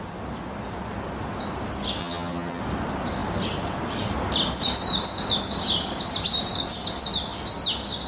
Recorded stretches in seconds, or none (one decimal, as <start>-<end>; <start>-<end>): 0.0-2.0; 2.6-8.1